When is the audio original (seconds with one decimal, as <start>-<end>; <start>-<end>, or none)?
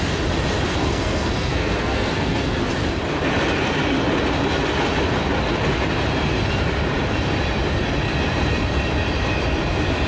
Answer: 0.0-0.7; 2.7-10.1